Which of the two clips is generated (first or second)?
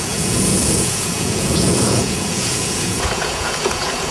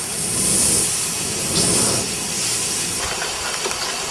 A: first